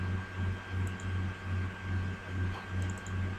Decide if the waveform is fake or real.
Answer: real